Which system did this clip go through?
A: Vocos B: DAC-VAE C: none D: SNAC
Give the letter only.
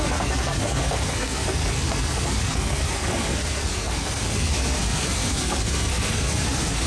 D